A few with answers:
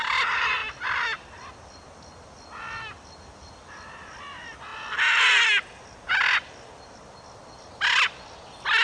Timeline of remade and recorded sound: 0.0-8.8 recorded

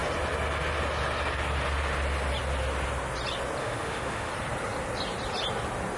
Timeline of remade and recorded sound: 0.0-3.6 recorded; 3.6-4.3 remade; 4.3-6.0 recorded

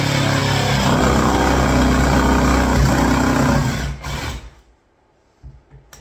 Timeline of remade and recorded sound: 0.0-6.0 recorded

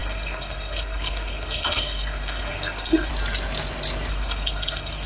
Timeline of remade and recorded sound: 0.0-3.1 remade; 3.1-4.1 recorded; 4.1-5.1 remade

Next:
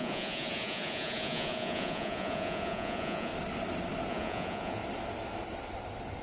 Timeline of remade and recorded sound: 0.0-3.3 remade; 3.3-4.1 recorded; 4.1-4.8 remade; 4.8-6.2 recorded

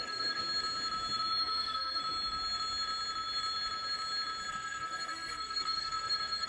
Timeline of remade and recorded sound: 0.0-0.4 remade; 0.4-1.4 recorded; 1.4-2.0 remade; 2.0-4.5 recorded; 4.5-6.5 remade